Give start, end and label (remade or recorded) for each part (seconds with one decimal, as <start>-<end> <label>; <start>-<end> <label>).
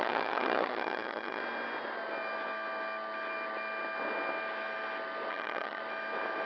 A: 0.0-1.4 remade; 1.4-5.3 recorded; 5.3-5.8 remade; 5.8-6.5 recorded